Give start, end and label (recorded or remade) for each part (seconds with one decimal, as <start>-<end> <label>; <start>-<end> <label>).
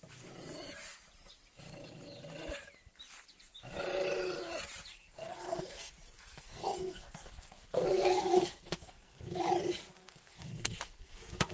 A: 0.0-4.9 recorded; 4.9-9.4 remade; 9.4-10.0 recorded; 10.0-11.5 remade